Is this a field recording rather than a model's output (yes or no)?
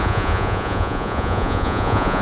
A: no